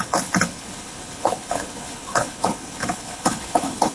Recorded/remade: remade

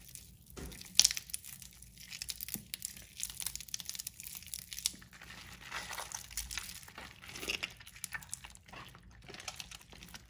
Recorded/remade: recorded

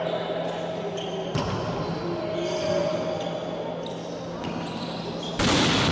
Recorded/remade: recorded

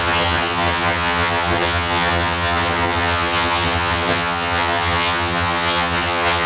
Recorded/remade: remade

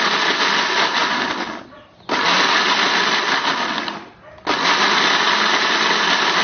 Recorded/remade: recorded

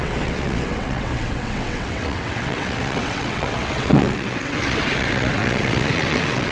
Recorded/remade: remade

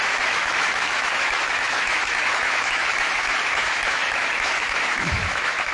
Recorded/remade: remade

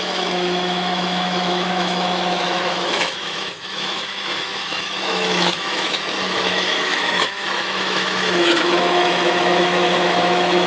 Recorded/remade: remade